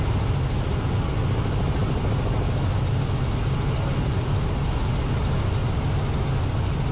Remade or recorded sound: recorded